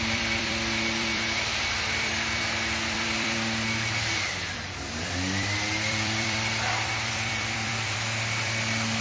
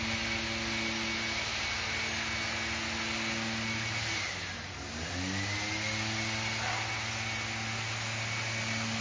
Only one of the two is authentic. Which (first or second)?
second